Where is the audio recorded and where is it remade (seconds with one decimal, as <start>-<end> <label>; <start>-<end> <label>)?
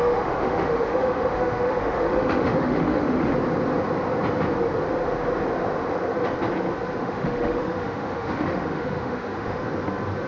0.0-3.3 remade; 3.3-7.0 recorded; 7.0-9.6 remade; 9.6-10.3 recorded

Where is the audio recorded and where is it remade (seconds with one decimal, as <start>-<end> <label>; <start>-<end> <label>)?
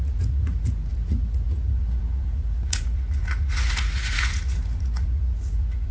0.0-5.9 remade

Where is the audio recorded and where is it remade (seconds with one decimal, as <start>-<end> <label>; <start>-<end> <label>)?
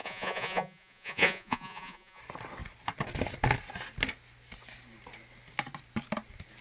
0.0-2.2 remade; 2.2-6.6 recorded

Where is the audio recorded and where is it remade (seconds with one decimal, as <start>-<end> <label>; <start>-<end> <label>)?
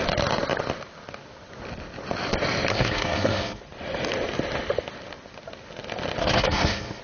0.0-2.7 recorded; 2.7-3.6 remade; 3.6-6.2 recorded; 6.2-7.0 remade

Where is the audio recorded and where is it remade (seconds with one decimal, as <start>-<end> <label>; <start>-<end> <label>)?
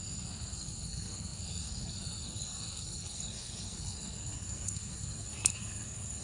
0.0-6.2 remade